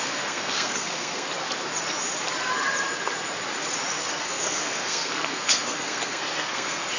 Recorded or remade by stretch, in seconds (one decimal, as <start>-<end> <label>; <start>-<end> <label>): 0.0-1.3 remade; 1.3-4.1 recorded; 4.1-7.0 remade